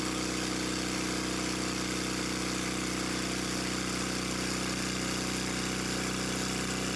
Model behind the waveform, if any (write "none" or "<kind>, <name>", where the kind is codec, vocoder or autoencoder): none